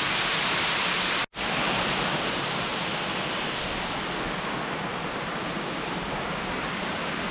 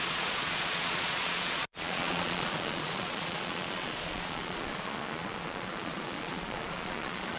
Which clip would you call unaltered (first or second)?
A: first